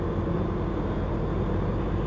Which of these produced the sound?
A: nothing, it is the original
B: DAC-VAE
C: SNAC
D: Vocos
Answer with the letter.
A